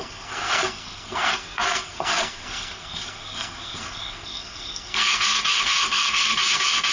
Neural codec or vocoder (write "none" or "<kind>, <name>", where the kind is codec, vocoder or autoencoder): codec, SNAC